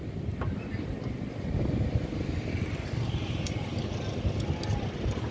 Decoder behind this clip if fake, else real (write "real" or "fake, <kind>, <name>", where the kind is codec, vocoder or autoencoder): real